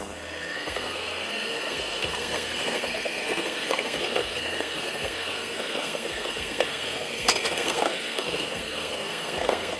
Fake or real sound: fake